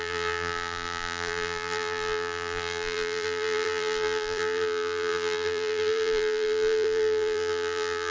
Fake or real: fake